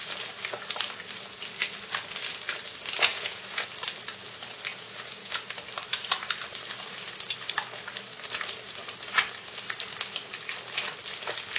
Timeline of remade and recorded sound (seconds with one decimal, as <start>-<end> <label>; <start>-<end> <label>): 0.0-3.1 recorded; 3.1-3.6 remade; 3.6-4.7 recorded; 4.7-5.3 remade; 5.3-11.6 recorded